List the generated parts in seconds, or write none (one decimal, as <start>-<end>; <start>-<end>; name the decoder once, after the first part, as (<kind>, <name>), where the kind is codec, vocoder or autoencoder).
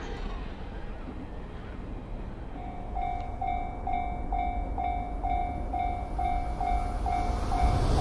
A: none